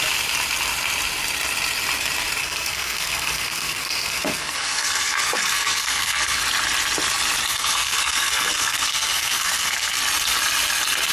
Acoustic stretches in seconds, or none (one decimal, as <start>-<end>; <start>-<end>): 0.0-2.4; 6.4-7.5; 10.0-11.1